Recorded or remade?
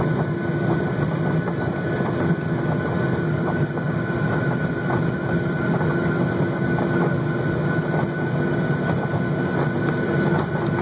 recorded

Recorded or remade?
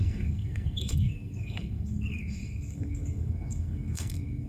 remade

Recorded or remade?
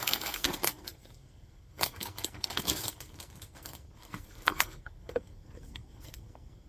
remade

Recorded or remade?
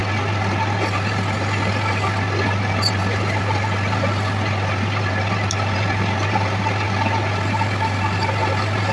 recorded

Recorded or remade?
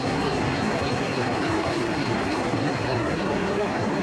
remade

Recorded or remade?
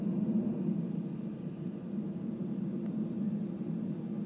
recorded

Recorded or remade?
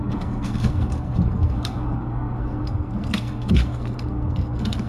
remade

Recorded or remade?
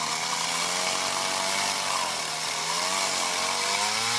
recorded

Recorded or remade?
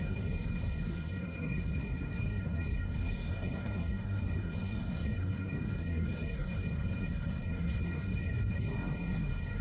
remade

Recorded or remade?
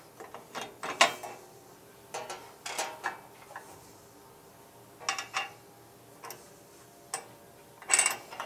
recorded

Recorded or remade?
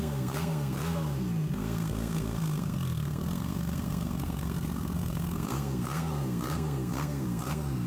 remade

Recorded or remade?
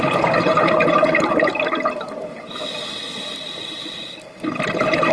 recorded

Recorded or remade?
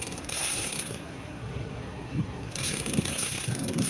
remade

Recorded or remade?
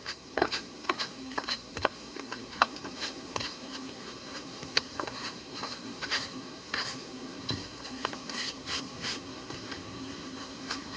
remade